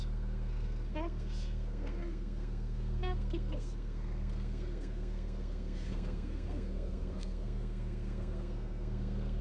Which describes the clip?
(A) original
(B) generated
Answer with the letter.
B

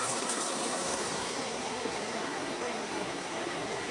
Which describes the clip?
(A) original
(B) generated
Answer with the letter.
B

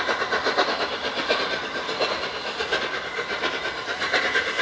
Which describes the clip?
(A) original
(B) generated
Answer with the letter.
A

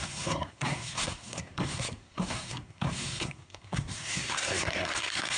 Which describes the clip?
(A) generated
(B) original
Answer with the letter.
A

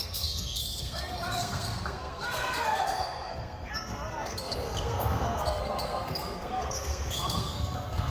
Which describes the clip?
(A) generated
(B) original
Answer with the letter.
A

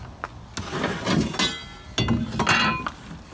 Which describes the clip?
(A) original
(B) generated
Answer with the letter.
A